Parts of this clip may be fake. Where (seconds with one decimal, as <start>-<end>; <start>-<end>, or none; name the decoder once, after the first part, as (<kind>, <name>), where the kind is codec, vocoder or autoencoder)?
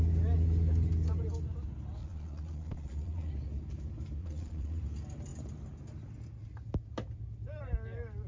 2.0-3.3 (vocoder, Vocos); 4.2-4.8